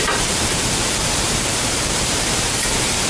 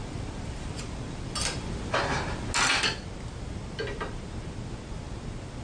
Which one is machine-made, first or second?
first